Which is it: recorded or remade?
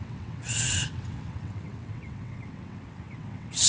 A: remade